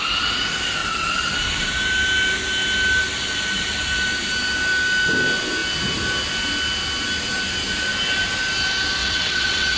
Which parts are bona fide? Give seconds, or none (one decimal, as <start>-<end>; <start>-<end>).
0.0-0.8; 1.3-9.0